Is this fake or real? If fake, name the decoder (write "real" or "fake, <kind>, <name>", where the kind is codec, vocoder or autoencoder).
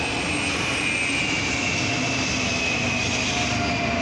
real